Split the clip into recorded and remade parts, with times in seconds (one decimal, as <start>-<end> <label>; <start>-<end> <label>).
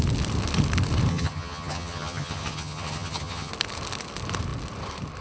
0.0-1.1 recorded; 1.1-3.5 remade; 3.5-5.2 recorded